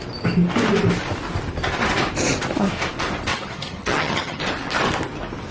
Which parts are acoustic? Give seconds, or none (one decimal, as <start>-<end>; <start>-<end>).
0.0-3.3; 4.4-5.5